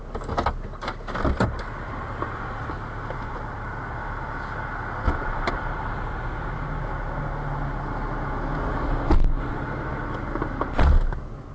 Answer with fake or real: real